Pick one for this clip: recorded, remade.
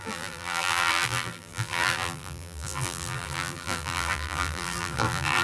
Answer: remade